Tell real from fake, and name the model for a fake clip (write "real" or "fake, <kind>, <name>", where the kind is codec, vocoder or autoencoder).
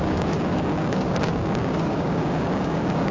fake, codec, DAC